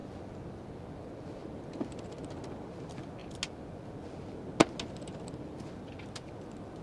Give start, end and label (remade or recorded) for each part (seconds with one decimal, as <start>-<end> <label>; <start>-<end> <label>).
0.0-6.8 recorded